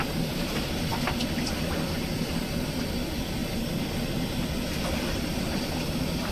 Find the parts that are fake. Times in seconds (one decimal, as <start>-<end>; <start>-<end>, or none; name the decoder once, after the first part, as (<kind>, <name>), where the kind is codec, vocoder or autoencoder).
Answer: 0.0-0.9 (vocoder, BigVGAN v2); 2.0-6.3